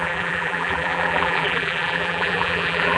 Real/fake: fake